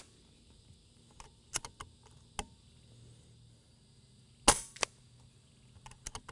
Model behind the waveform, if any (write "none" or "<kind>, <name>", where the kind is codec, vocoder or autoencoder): none